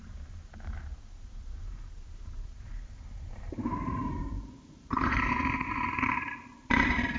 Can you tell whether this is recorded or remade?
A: remade